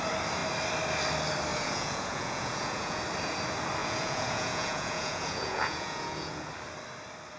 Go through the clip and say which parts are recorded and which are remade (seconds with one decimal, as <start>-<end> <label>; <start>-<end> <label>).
0.0-1.5 recorded; 1.5-3.0 remade; 3.0-3.8 recorded; 3.8-6.5 remade; 6.5-7.4 recorded